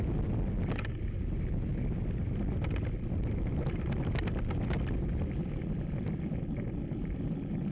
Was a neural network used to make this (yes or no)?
no